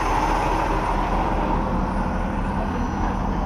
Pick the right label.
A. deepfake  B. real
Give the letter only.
B